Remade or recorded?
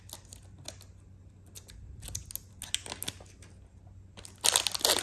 recorded